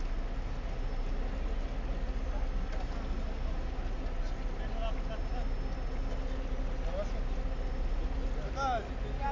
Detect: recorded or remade recorded